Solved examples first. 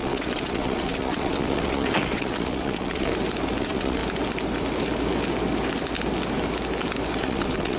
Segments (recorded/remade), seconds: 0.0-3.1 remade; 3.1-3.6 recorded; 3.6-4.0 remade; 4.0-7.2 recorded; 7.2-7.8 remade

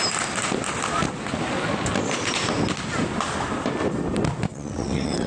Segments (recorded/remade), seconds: 0.0-4.5 recorded; 4.5-5.3 remade

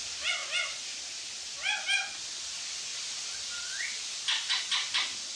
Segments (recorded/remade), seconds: 0.0-5.4 recorded

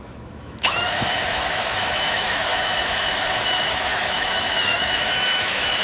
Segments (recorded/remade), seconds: 0.0-5.8 remade